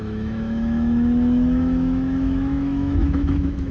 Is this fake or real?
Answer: fake